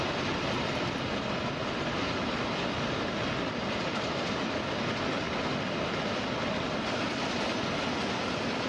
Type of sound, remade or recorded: recorded